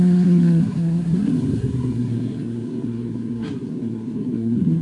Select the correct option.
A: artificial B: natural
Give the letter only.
A